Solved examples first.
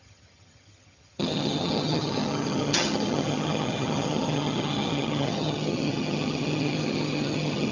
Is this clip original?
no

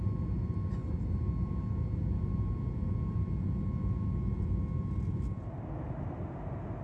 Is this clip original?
yes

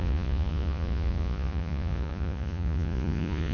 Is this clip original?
no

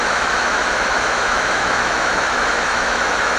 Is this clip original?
no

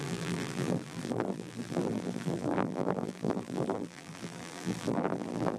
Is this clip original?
no